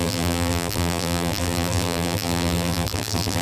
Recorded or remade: remade